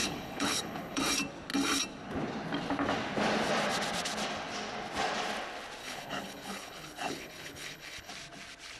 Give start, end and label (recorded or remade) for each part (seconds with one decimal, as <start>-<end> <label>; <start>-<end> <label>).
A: 0.0-1.0 remade; 1.0-5.8 recorded; 5.8-8.1 remade; 8.1-8.8 recorded